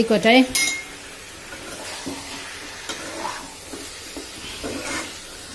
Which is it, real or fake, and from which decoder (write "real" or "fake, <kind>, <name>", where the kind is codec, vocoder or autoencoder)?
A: real